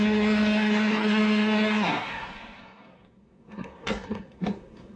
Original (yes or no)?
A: no